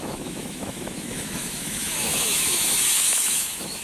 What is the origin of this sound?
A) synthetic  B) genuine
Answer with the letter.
A